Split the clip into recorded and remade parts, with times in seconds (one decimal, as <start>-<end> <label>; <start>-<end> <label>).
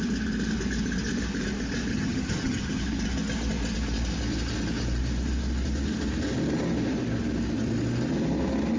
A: 0.0-1.9 recorded; 1.9-2.8 remade; 2.8-8.8 recorded